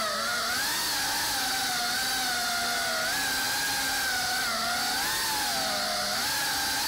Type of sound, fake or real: real